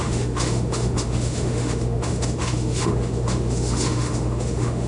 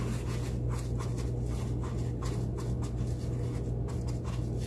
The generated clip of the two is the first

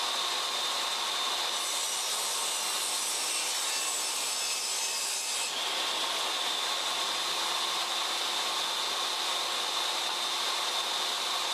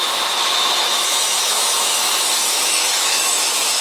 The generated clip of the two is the second